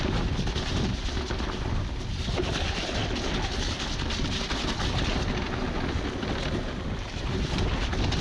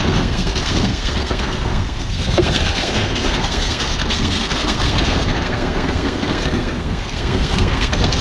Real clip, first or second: first